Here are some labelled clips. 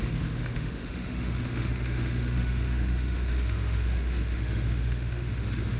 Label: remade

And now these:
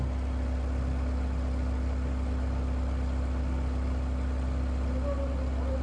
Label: recorded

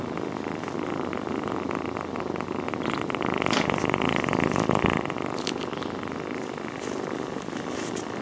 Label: recorded